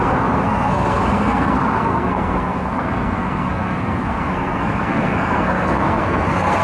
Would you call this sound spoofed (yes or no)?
yes